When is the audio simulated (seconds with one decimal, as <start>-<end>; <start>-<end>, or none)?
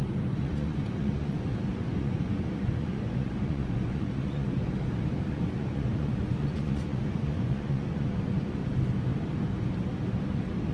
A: 0.0-4.6; 5.3-8.6